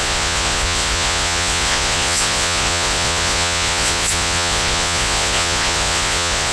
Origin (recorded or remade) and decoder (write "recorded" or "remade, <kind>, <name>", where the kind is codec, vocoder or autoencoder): remade, vocoder, Vocos